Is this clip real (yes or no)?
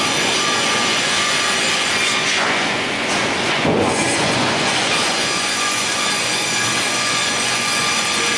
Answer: no